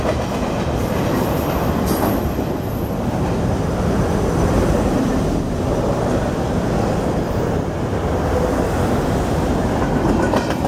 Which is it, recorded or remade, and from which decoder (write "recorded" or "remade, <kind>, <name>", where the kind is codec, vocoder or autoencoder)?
recorded